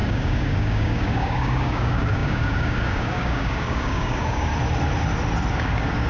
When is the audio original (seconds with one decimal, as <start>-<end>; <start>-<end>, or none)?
4.5-5.5